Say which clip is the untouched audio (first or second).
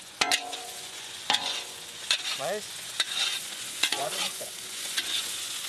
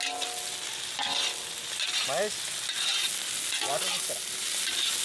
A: second